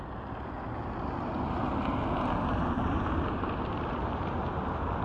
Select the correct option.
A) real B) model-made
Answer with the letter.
A